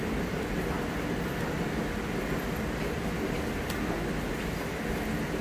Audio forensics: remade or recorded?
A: recorded